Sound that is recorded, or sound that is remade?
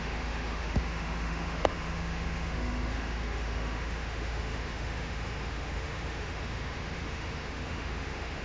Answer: remade